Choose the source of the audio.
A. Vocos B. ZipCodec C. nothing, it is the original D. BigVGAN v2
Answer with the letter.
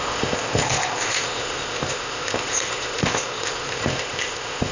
B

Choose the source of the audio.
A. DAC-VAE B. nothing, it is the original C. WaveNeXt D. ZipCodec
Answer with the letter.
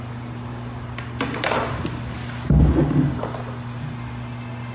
B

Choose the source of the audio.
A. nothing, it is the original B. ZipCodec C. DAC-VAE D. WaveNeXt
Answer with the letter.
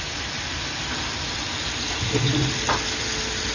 A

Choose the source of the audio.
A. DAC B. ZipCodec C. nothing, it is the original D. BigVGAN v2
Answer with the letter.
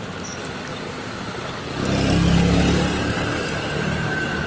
C